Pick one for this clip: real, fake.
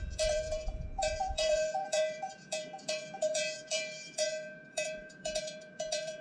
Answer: fake